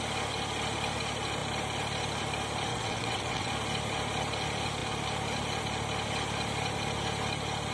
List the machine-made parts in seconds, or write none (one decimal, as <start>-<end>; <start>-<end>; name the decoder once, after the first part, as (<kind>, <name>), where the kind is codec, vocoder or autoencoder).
2.7-3.5 (vocoder, WaveNeXt)